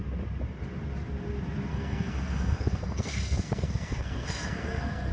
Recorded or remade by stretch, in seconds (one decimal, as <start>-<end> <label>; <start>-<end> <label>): 0.0-1.7 recorded; 1.7-5.1 remade